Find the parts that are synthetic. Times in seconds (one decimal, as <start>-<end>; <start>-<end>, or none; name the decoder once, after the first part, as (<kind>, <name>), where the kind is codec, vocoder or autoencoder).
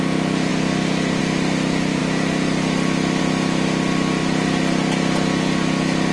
none